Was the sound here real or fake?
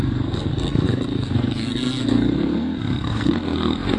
fake